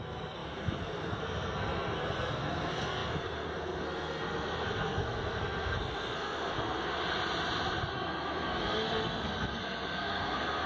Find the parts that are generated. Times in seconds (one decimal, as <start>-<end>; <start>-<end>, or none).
0.0-6.9; 7.9-10.7

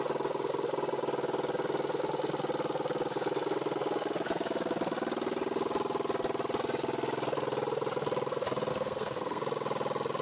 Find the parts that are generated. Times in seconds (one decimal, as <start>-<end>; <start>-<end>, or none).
8.7-9.4

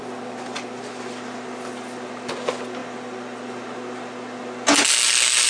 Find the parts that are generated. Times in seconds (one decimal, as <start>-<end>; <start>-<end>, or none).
none

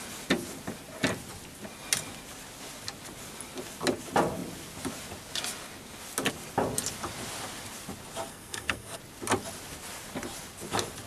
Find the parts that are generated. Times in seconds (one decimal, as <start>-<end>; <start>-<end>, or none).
8.3-9.0